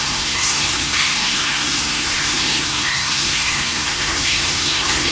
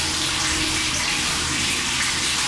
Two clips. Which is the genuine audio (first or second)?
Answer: second